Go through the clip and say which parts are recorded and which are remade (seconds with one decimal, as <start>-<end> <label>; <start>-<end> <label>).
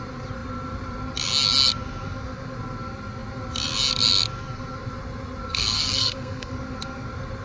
0.0-5.5 recorded; 5.5-6.5 remade; 6.5-7.4 recorded